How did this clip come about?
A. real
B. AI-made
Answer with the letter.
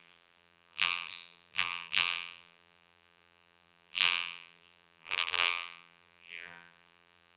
B